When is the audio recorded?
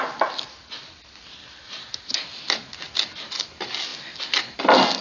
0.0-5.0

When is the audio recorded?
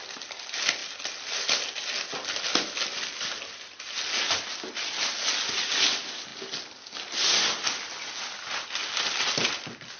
0.0-10.0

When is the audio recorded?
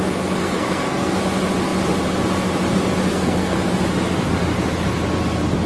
0.0-0.4; 1.2-3.1; 3.7-5.7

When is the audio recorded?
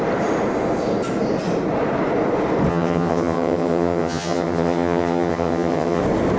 0.0-2.7; 6.0-6.4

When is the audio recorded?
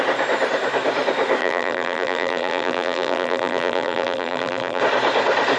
0.0-1.4; 4.8-5.6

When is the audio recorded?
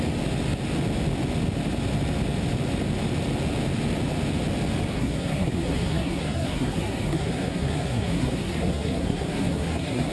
0.0-4.9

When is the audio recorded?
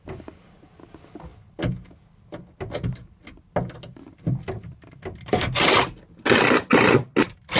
0.0-7.6